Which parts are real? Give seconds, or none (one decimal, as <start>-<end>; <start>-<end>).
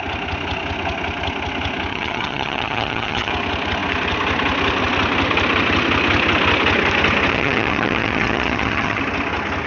0.0-1.9; 3.3-7.3; 9.0-9.7